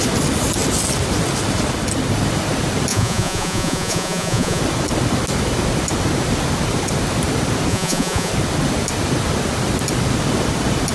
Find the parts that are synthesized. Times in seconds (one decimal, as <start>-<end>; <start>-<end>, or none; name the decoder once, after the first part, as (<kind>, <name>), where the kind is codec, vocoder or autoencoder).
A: 2.9-4.6 (vocoder, Vocos); 7.7-8.3